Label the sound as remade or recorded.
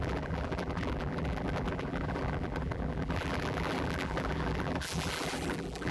remade